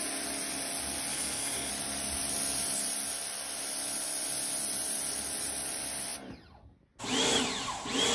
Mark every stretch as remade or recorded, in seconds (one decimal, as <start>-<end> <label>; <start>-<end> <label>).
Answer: 0.0-1.1 recorded; 1.1-1.7 remade; 1.7-8.1 recorded